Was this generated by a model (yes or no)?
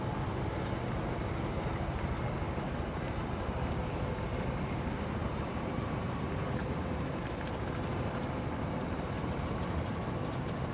no